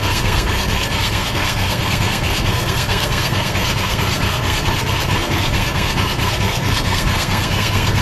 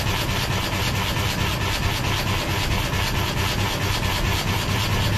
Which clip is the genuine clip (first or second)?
second